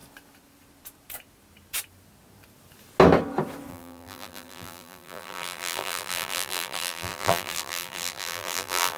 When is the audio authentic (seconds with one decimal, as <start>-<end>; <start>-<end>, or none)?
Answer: 0.0-3.7